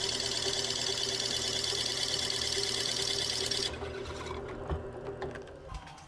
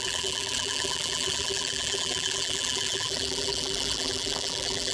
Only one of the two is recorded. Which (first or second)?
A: first